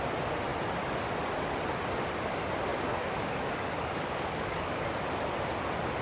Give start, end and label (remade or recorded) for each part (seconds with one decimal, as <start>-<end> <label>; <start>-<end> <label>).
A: 0.0-2.7 recorded; 2.7-4.9 remade; 4.9-6.0 recorded